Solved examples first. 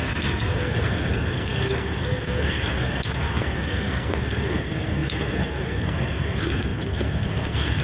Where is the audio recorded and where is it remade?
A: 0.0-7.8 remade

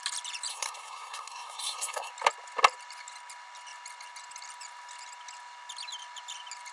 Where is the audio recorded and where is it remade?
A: 0.0-0.5 recorded; 0.5-2.1 remade; 2.1-6.7 recorded

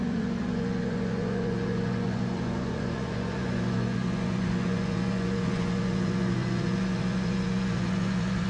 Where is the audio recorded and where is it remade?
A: 0.0-8.5 remade